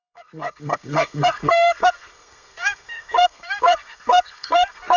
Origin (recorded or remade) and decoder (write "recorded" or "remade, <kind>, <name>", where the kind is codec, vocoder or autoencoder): remade, codec, SNAC